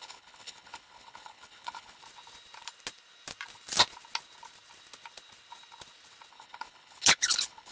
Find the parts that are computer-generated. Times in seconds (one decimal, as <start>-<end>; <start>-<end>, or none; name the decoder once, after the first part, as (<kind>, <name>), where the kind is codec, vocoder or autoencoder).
0.0-2.0 (codec, HILCodec); 6.3-7.7